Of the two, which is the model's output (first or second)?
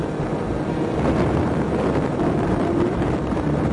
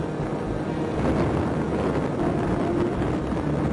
first